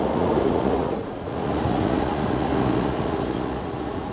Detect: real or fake fake